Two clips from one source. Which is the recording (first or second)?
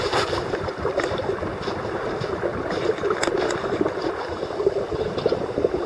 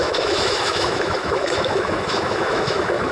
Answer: first